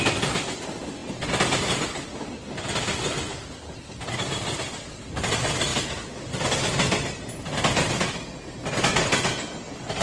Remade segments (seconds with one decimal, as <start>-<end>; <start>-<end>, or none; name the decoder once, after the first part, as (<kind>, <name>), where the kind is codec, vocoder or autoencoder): none